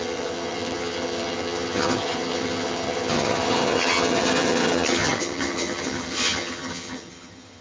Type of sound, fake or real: fake